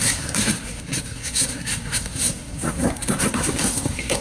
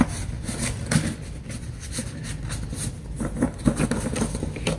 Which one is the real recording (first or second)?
second